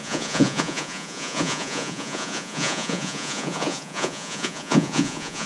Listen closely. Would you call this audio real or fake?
fake